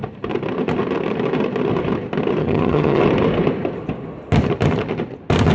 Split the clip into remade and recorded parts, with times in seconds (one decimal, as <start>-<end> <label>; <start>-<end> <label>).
0.0-2.4 recorded; 2.4-3.0 remade; 3.0-5.5 recorded